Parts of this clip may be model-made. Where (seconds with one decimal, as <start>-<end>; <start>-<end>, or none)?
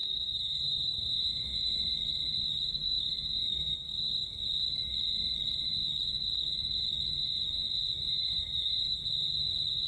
0.0-1.8; 2.7-4.3; 8.1-9.0